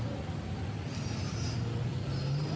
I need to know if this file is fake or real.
real